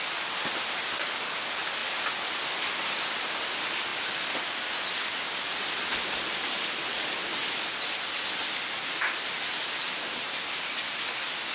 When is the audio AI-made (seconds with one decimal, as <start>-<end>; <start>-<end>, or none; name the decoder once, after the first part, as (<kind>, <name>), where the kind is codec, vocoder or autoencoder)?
none